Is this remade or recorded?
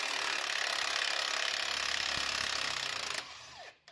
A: recorded